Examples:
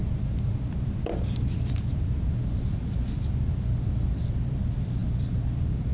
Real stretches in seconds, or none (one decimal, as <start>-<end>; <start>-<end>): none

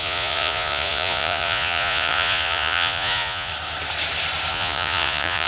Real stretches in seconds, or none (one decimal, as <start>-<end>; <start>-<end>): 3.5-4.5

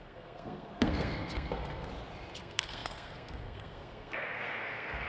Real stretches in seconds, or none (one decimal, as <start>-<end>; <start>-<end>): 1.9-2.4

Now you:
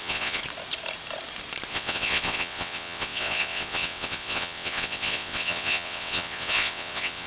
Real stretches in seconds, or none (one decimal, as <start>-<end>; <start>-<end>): 0.4-1.7

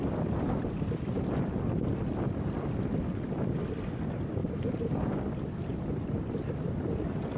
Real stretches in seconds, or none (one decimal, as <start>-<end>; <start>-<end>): 4.4-5.4